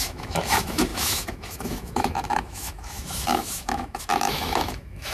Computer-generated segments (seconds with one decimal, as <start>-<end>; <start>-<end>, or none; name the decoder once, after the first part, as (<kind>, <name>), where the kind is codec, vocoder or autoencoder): 0.0-5.1 (autoencoder, DAC-VAE)